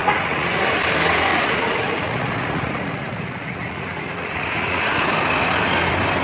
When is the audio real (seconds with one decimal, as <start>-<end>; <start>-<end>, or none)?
0.6-1.3; 5.0-6.2